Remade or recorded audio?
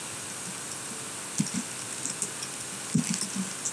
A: recorded